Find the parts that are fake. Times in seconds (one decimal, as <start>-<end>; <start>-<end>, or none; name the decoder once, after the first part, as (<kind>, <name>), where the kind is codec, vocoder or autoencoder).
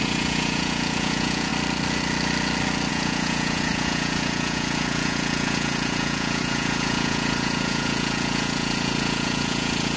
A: 0.0-1.5 (vocoder, Vocos); 2.9-10.0